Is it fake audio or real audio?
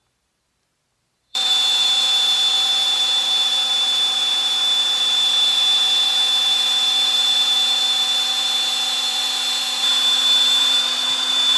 fake